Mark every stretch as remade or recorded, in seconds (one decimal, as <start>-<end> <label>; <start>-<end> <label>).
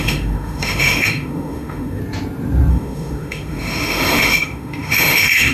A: 0.0-2.0 remade; 2.0-2.7 recorded; 2.7-5.5 remade